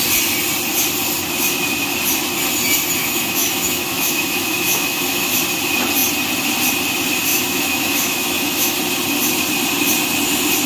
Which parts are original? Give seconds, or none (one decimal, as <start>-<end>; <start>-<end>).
0.0-3.0; 5.4-7.3; 8.8-10.7